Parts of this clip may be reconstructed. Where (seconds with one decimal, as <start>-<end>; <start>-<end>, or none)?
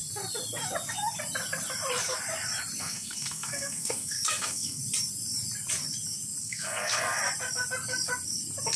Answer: 2.8-4.8; 6.4-7.2